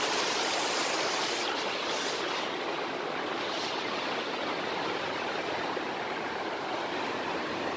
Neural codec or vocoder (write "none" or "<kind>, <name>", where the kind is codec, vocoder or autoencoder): none